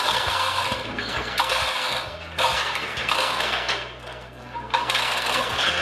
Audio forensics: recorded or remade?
remade